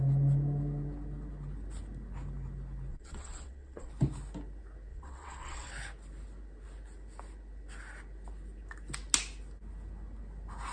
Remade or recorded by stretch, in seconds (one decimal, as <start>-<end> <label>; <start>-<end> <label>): 0.0-2.9 recorded; 2.9-3.9 remade; 3.9-4.9 recorded; 4.9-5.7 remade; 5.7-10.7 recorded